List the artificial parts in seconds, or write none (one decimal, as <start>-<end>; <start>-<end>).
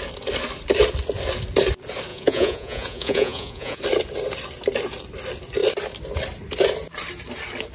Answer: 2.1-3.8